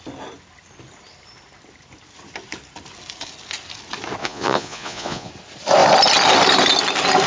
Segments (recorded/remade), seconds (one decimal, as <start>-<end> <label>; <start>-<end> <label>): 0.0-4.2 recorded; 4.2-5.3 remade; 5.3-7.3 recorded